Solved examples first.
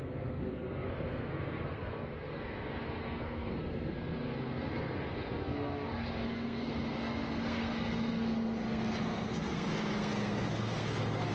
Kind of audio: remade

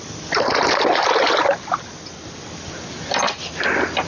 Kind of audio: recorded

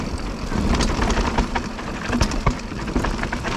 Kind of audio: remade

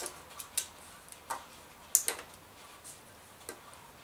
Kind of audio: recorded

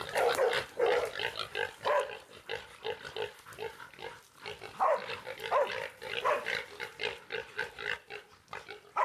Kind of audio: recorded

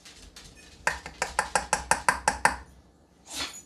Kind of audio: recorded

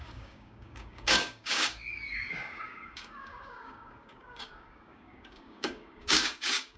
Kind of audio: remade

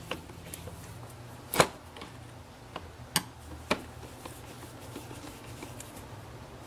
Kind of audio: recorded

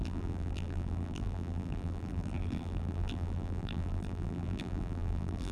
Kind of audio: remade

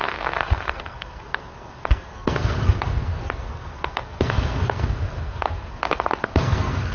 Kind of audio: remade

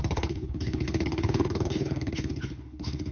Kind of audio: remade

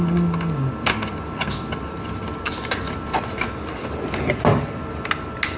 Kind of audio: recorded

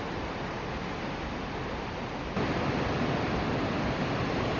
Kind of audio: recorded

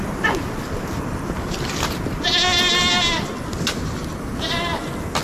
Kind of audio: recorded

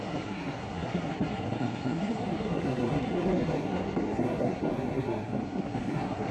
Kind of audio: remade